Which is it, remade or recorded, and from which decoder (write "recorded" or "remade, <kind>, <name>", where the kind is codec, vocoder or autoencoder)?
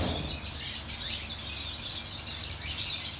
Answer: recorded